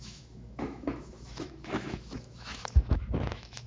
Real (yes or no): no